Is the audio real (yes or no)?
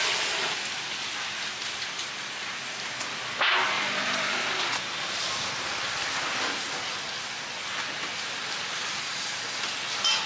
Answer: yes